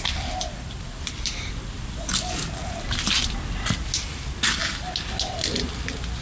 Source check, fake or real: real